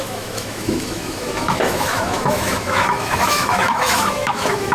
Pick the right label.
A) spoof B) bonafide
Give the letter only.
A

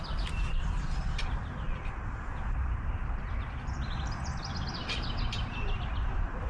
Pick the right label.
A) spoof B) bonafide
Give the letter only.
B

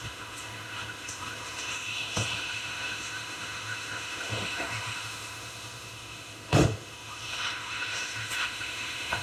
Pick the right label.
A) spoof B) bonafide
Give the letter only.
A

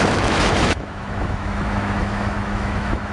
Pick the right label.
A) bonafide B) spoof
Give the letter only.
B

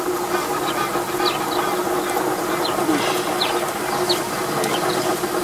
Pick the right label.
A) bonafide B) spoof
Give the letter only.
A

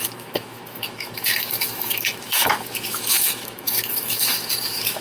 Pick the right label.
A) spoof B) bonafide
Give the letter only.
A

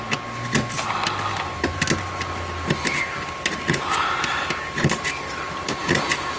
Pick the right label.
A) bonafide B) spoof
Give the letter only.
A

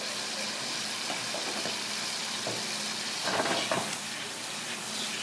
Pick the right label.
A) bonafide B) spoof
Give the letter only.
A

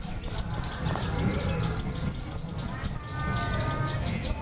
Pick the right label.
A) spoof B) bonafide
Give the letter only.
B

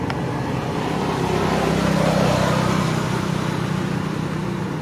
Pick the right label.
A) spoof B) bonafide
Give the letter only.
B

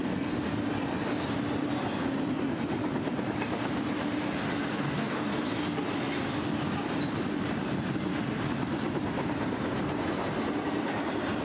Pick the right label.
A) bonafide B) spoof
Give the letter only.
A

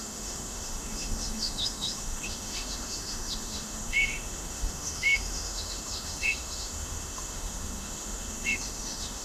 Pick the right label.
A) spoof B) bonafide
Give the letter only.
A